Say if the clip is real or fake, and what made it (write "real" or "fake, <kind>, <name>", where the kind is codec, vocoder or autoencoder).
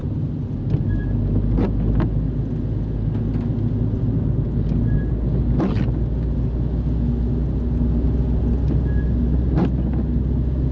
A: real